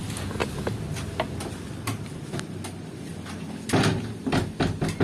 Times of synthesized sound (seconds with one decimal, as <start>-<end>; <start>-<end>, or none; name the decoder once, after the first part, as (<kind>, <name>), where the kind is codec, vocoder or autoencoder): none